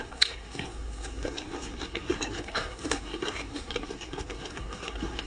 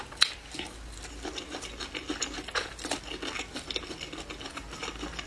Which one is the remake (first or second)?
first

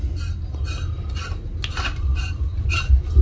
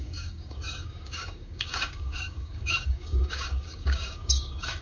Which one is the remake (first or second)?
second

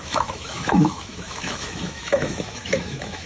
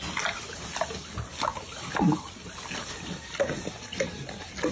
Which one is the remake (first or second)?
first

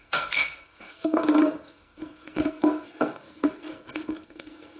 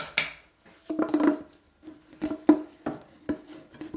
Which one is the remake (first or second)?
first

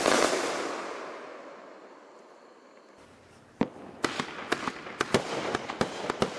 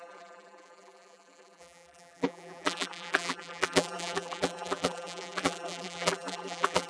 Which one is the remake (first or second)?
second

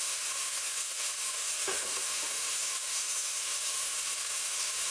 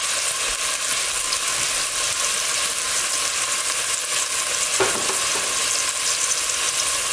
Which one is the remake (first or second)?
first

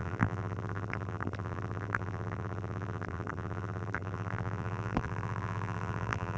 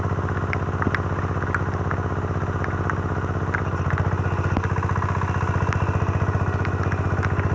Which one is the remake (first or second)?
first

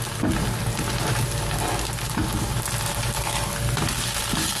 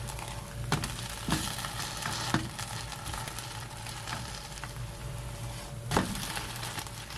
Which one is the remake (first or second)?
second